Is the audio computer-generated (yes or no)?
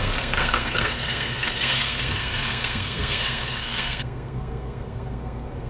yes